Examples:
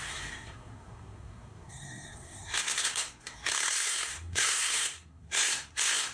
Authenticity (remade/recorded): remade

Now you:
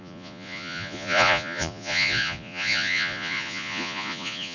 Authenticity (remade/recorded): remade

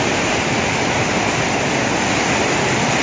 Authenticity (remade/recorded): recorded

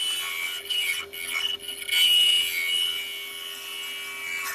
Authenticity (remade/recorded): recorded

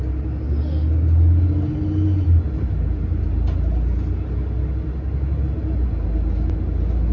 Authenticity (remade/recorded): recorded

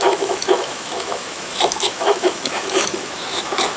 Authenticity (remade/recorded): remade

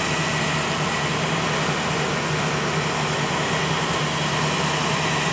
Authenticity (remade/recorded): recorded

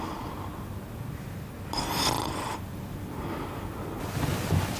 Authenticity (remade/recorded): recorded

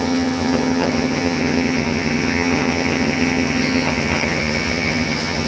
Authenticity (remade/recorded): remade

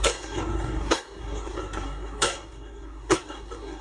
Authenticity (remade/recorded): remade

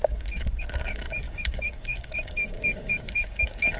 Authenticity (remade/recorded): remade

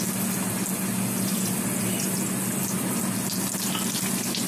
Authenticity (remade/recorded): recorded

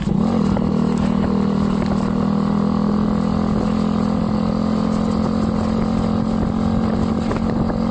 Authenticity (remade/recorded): recorded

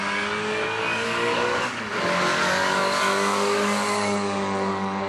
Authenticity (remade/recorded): remade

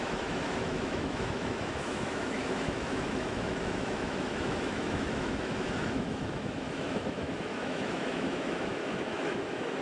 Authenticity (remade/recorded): remade